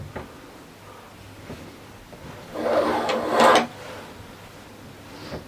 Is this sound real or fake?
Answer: real